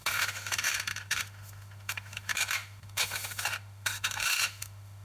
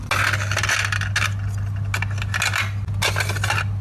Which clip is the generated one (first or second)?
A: first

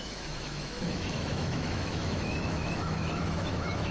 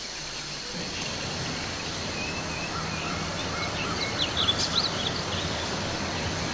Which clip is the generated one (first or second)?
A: first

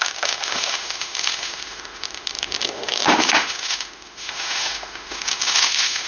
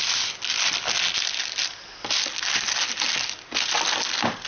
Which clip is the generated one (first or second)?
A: first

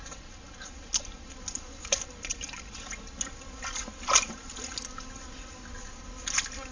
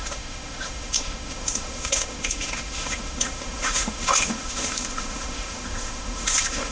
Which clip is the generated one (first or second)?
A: second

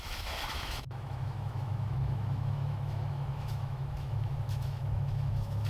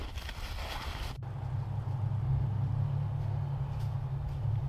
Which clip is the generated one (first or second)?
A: first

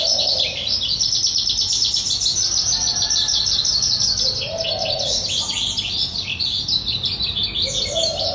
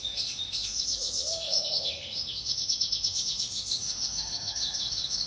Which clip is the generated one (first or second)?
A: second